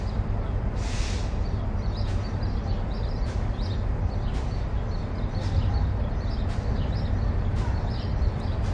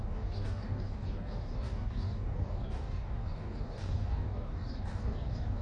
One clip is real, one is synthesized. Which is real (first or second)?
first